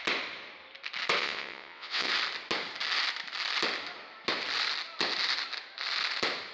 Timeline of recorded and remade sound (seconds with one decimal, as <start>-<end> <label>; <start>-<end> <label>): 0.0-1.2 recorded; 1.2-2.1 remade; 2.1-6.5 recorded